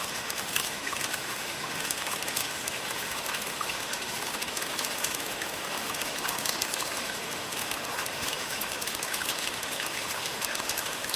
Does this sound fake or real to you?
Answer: fake